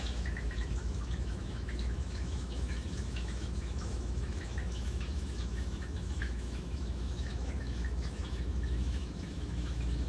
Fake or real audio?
fake